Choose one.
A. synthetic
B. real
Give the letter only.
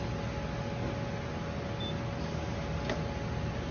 B